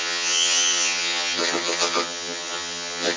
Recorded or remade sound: remade